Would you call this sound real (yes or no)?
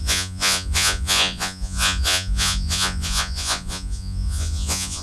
no